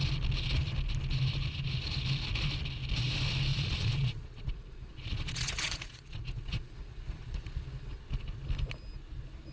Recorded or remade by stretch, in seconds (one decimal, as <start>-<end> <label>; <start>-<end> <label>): 0.0-3.5 recorded; 3.5-7.6 remade; 7.6-9.5 recorded

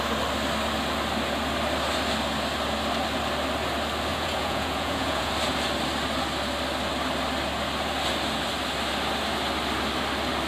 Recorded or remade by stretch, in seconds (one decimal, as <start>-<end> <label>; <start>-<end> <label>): 0.0-4.1 recorded; 4.1-5.3 remade; 5.3-10.5 recorded

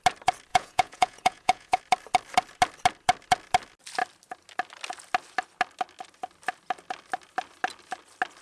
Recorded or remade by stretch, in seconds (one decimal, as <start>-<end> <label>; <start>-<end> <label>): 0.0-0.5 recorded; 0.5-1.8 remade; 1.8-8.4 recorded

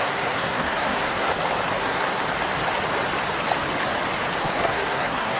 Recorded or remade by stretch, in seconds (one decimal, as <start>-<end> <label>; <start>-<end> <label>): 0.0-1.3 remade; 1.3-1.8 recorded; 1.8-2.2 remade; 2.2-4.4 recorded; 4.4-5.4 remade

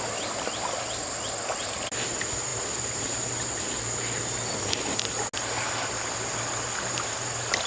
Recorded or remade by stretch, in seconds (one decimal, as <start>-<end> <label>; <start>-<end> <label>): 0.0-7.7 recorded